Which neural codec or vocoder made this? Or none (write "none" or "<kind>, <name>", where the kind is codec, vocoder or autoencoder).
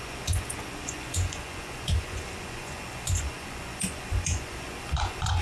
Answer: vocoder, Vocos